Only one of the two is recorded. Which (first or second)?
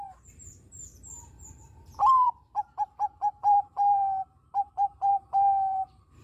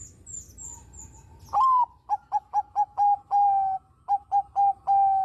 second